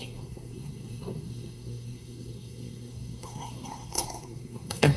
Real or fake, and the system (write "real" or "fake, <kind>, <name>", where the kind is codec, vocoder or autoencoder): fake, codec, SNAC